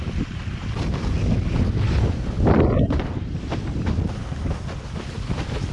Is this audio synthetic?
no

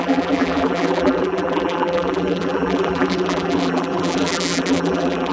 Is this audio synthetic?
yes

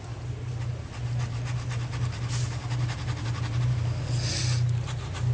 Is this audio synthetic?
no